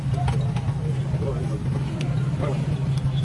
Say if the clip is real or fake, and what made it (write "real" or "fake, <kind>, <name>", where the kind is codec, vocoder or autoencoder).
real